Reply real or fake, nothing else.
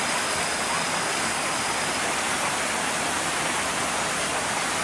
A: real